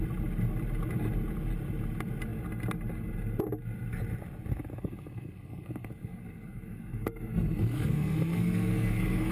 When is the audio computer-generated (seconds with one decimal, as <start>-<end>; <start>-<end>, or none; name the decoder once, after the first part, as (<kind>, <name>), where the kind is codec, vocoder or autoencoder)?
4.7-9.3 (codec, SNAC)